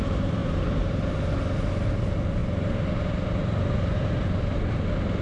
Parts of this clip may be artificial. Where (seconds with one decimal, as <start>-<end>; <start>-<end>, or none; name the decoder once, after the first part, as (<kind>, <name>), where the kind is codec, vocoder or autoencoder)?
0.4-1.1 (vocoder, BigVGAN v2); 2.4-4.7